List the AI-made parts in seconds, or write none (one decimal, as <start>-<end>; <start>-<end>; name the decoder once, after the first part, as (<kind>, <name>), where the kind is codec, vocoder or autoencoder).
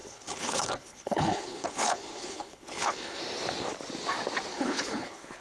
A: 0.0-3.2 (codec, HILCodec); 4.5-5.4